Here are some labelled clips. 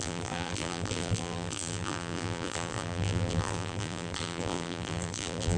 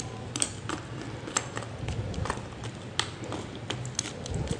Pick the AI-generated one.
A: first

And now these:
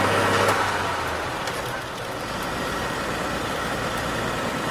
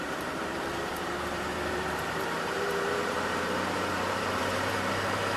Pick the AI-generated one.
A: second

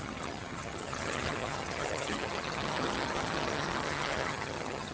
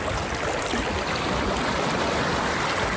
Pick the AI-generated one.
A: first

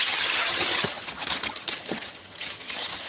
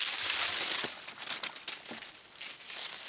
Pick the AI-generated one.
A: first